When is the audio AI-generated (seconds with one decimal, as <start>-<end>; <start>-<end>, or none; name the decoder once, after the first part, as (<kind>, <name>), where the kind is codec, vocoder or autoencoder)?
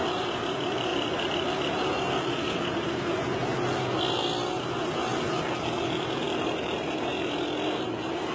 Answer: none